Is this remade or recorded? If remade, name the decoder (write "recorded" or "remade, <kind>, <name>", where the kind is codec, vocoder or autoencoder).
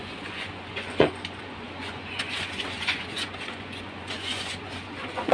remade, vocoder, Vocos